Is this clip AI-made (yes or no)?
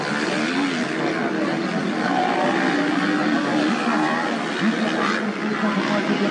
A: no